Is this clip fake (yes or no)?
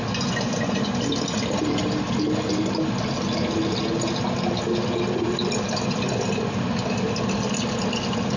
no